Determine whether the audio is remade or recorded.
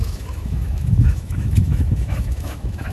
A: remade